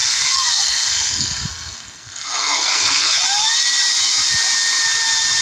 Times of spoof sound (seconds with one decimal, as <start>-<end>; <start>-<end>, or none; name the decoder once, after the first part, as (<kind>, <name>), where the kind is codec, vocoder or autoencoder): 0.0-3.2 (codec, SNAC)